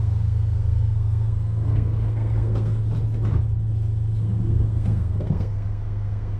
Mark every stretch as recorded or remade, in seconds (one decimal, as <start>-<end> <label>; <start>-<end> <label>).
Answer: 0.0-2.8 remade; 2.8-4.2 recorded; 4.2-6.4 remade